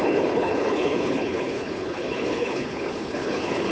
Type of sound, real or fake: fake